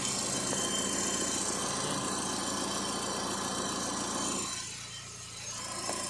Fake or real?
real